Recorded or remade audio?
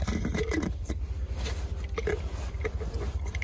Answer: remade